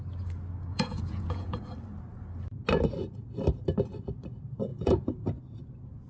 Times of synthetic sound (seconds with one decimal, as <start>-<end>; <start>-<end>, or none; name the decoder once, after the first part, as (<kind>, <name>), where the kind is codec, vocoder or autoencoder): 0.7-1.6 (vocoder, Vocos); 4.7-5.4